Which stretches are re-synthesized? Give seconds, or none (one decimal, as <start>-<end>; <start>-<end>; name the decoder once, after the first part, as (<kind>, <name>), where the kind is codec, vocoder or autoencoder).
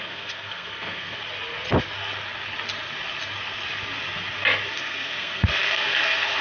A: 0.0-1.2 (codec, SNAC); 4.7-6.4